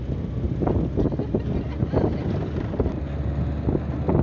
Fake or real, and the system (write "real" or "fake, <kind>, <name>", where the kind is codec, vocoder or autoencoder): real